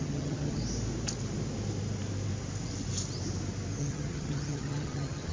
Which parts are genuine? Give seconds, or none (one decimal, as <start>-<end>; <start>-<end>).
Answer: 0.6-3.8